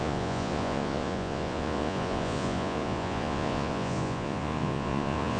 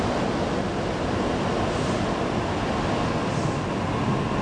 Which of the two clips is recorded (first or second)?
second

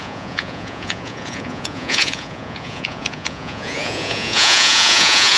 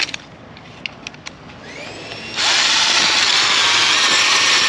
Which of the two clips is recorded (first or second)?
second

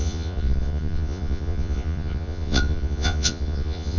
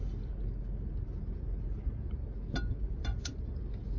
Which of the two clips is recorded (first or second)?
second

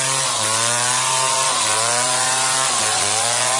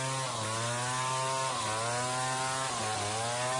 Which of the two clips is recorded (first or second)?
second